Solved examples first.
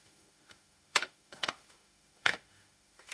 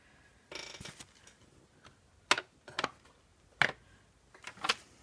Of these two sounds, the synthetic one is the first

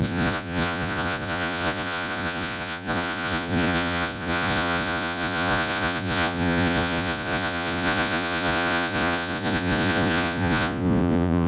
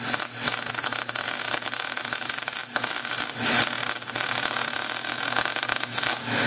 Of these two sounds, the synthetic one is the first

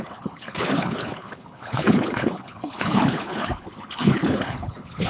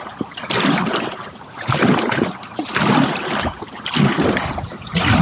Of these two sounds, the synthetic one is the first